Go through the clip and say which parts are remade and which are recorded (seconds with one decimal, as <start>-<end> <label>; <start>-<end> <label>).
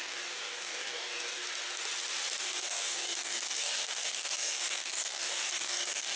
0.0-1.4 remade; 1.4-2.4 recorded; 2.4-6.2 remade